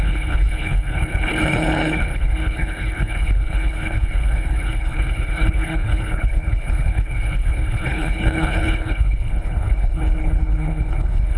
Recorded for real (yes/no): no